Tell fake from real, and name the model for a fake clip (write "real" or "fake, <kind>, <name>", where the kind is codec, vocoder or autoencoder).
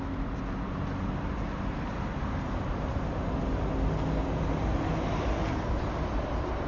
real